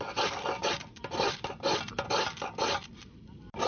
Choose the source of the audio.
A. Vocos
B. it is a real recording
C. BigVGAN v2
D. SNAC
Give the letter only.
B